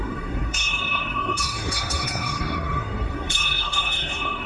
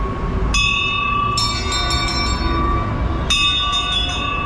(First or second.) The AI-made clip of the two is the first